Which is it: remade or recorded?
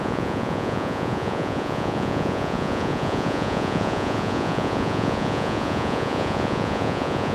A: remade